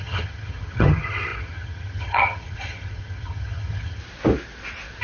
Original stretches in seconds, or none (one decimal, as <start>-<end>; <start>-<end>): 4.0-5.0